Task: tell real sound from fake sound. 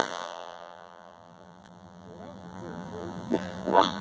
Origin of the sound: fake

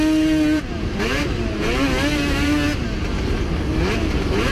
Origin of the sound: real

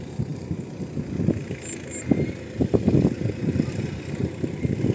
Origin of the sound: real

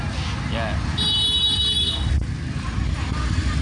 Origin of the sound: real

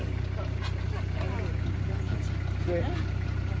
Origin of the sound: real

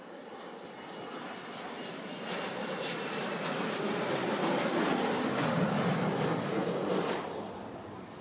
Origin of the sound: real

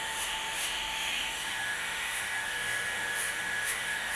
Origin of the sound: fake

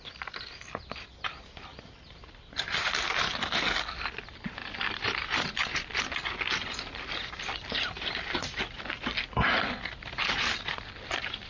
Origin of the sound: real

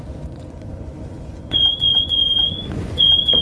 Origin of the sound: fake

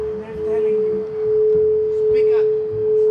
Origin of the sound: real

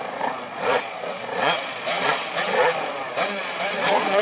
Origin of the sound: fake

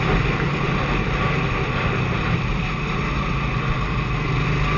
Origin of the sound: real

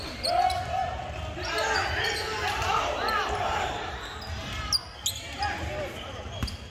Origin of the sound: real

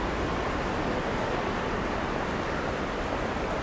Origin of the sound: real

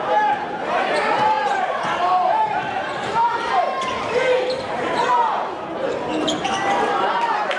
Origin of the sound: fake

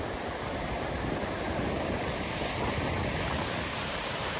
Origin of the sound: real